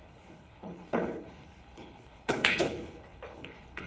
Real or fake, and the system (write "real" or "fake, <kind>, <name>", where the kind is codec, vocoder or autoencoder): fake, codec, HILCodec